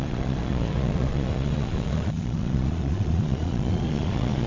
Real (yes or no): no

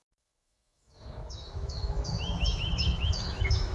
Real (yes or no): no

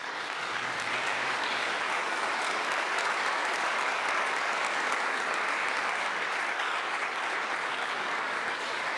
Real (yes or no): no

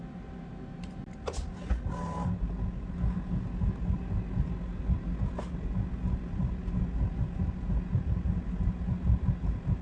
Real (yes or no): yes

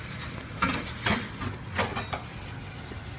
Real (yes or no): yes